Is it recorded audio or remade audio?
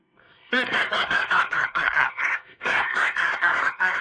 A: remade